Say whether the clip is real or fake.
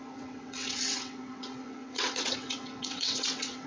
fake